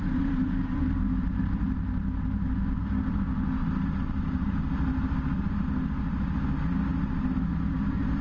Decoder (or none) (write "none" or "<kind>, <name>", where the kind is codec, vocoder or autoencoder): none